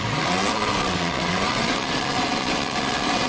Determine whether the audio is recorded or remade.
remade